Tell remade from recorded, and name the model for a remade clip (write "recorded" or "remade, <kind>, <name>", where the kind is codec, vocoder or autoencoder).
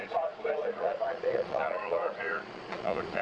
remade, vocoder, Vocos